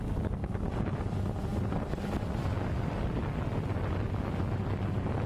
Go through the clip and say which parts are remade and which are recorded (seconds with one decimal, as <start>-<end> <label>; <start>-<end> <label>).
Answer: 0.0-0.4 recorded; 0.4-1.1 remade; 1.1-5.3 recorded